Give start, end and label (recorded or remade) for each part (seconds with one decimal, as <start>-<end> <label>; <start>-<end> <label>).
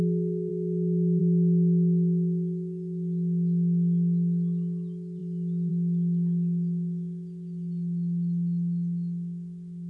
0.0-9.9 recorded